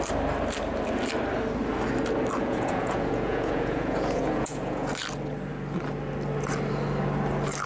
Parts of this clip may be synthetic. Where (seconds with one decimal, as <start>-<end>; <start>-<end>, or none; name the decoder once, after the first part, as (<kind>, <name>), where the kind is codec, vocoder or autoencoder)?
2.4-4.9 (vocoder, Vocos)